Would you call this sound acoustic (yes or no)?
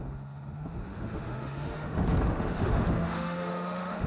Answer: no